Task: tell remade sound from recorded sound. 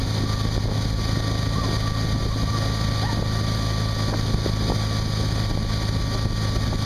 recorded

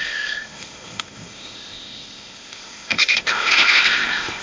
remade